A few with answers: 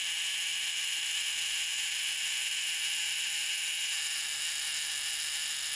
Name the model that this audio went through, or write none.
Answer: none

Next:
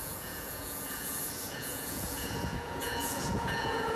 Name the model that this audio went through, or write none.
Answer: vocoder, Vocos